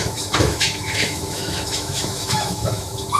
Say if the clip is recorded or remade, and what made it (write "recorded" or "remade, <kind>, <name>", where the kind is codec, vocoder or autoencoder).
remade, autoencoder, DAC-VAE